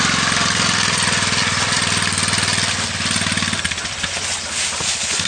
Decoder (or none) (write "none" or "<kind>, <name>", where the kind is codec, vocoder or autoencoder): none